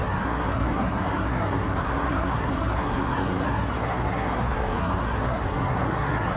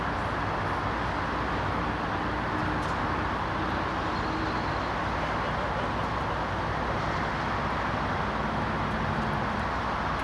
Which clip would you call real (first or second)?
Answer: second